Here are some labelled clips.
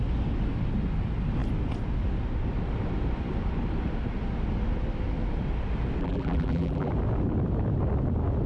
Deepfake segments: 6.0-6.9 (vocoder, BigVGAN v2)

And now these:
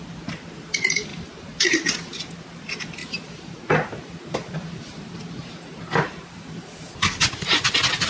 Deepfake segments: 1.1-1.9 (vocoder, BigVGAN v2); 3.0-7.0

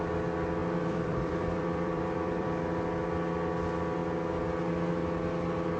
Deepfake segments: 0.6-2.6 (vocoder, BigVGAN v2)

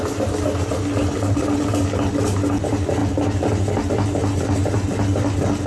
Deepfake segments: none

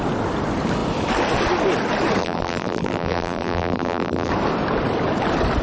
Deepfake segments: 2.2-4.3 (vocoder, BigVGAN v2)

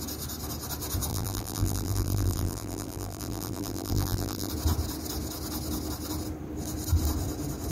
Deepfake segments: 1.1-4.5 (vocoder, BigVGAN v2)

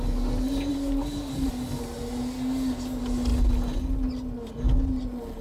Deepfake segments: 0.7-1.5 (vocoder, BigVGAN v2)